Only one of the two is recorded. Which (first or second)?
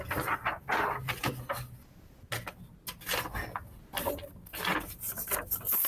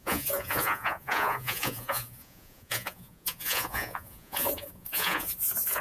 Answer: first